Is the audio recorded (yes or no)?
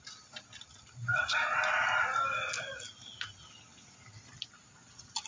yes